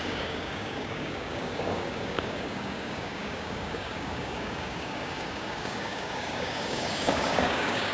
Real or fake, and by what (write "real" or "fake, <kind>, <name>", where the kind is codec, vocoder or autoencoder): fake, codec, DAC